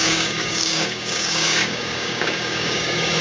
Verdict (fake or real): fake